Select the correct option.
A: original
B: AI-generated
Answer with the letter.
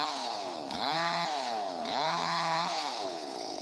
B